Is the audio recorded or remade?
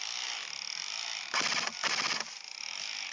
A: recorded